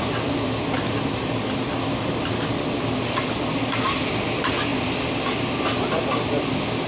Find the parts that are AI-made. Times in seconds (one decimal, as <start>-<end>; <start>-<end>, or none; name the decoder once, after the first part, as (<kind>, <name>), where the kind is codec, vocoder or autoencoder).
none

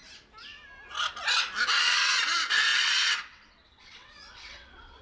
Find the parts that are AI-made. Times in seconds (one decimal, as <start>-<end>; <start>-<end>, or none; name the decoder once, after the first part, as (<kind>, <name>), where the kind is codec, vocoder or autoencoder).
1.8-5.0 (vocoder, WaveNeXt)

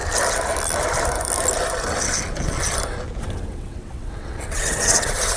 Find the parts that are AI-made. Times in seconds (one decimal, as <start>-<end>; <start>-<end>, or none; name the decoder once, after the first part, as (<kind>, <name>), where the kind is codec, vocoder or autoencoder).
3.2-5.4 (vocoder, WaveNeXt)